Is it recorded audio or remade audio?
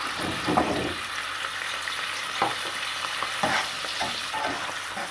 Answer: recorded